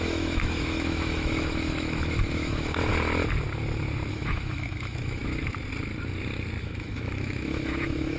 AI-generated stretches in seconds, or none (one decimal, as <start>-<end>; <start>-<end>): 0.0-2.9; 4.1-5.2; 6.6-8.2